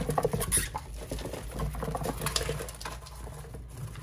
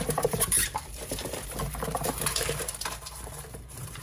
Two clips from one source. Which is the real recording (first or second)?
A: first